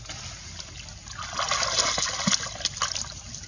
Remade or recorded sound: recorded